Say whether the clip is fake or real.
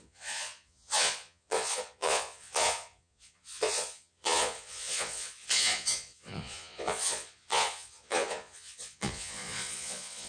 fake